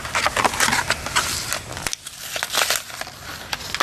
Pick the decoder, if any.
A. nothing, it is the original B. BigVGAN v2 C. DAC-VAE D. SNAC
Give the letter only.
A